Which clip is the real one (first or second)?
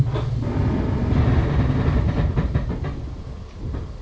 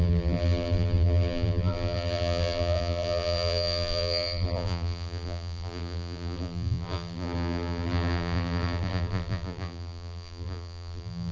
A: first